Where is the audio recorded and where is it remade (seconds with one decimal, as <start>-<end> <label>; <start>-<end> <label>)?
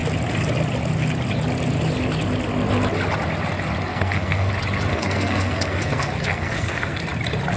0.0-3.9 recorded; 3.9-4.5 remade; 4.5-4.9 recorded; 4.9-7.0 remade; 7.0-7.6 recorded